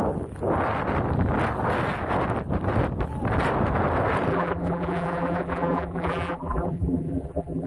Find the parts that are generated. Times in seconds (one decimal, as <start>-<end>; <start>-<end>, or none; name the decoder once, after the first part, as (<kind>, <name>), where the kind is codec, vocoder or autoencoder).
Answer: 4.3-7.7 (vocoder, BigVGAN v2)